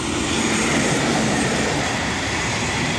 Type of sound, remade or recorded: remade